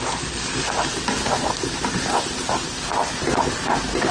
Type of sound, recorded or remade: recorded